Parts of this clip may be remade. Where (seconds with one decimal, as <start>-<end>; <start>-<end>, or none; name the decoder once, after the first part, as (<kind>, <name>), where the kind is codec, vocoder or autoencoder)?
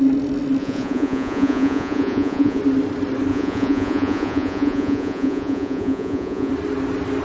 0.6-2.6 (vocoder, Vocos); 3.3-6.5